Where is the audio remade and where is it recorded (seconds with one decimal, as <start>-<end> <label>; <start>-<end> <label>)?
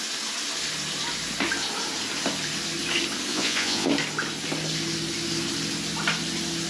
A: 0.0-3.3 recorded; 3.3-3.9 remade; 3.9-6.7 recorded